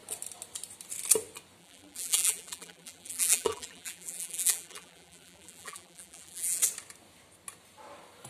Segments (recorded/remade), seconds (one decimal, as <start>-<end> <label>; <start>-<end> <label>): 0.0-1.6 recorded; 1.6-6.6 remade; 6.6-8.3 recorded